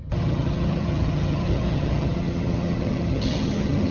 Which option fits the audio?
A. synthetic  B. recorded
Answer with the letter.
A